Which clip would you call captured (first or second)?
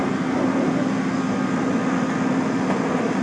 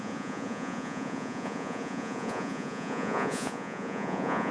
first